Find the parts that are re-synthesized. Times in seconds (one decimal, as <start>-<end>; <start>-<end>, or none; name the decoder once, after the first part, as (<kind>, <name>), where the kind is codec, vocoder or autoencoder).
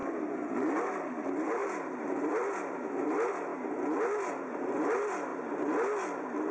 1.1-1.6 (vocoder, BigVGAN v2); 2.3-3.5; 4.3-5.3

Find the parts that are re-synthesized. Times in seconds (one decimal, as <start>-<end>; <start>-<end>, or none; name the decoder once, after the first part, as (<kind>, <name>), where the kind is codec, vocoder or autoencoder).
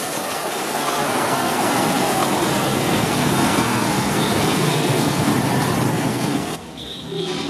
0.0-5.3 (codec, SNAC); 5.9-7.5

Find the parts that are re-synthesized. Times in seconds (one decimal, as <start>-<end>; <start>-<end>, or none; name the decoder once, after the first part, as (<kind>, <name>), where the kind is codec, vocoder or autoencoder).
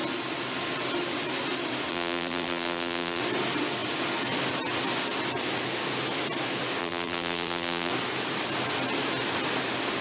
1.9-3.2 (vocoder, BigVGAN v2); 6.8-7.9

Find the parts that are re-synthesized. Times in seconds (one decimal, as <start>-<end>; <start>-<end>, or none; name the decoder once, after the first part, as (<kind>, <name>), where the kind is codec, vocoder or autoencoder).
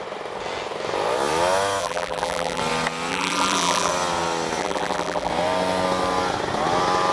1.8-2.6 (vocoder, BigVGAN v2); 3.1-3.9; 4.6-5.3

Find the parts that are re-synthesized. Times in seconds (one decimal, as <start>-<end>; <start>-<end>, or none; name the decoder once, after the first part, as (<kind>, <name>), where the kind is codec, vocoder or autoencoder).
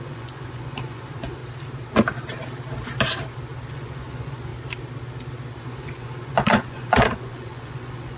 0.0-1.4 (vocoder, Vocos); 3.7-4.5; 5.6-8.2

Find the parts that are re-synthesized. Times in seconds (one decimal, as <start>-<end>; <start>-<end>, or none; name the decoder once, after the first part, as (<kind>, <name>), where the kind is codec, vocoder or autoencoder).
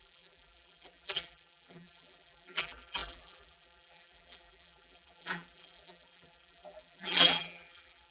0.0-8.1 (vocoder, BigVGAN v2)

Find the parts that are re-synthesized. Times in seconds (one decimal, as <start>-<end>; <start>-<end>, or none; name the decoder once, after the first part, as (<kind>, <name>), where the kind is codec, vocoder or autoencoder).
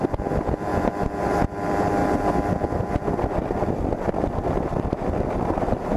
0.0-0.7 (vocoder, BigVGAN v2); 1.4-2.0; 5.6-6.0